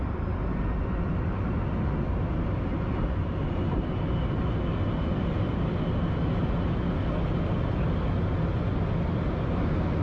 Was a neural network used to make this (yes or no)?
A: no